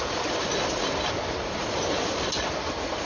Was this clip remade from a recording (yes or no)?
no